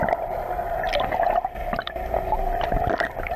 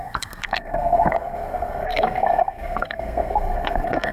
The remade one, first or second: second